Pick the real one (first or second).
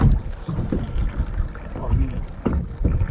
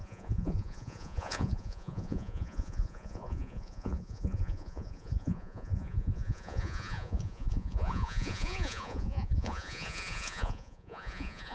first